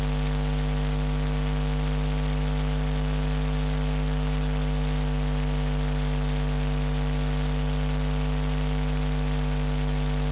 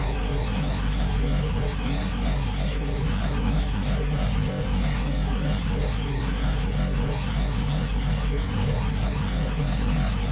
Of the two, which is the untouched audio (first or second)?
first